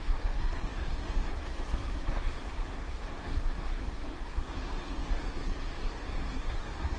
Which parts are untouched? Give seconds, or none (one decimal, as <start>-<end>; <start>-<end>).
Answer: none

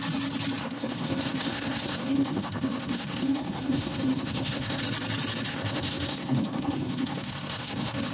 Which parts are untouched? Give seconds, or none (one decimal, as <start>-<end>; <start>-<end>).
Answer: 0.0-0.6; 4.8-5.5

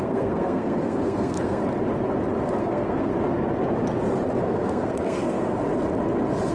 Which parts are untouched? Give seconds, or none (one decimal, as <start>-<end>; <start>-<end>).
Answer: 1.6-2.6; 3.1-4.4; 5.6-6.5

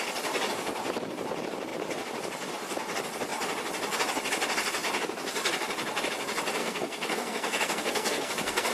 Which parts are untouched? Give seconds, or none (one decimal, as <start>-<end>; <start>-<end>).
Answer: 0.0-6.6